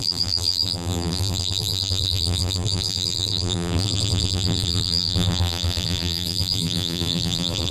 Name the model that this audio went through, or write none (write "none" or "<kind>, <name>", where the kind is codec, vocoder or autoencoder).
vocoder, BigVGAN v2